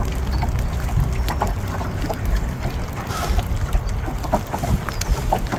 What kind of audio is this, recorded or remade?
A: recorded